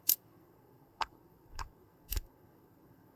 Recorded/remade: remade